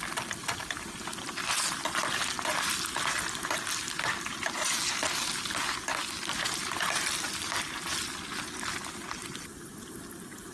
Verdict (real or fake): real